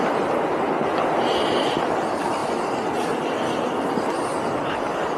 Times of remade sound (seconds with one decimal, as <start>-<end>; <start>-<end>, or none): none